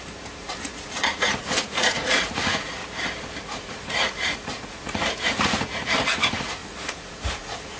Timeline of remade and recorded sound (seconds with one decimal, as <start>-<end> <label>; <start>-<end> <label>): 0.0-2.8 remade; 2.8-3.4 recorded; 3.4-7.8 remade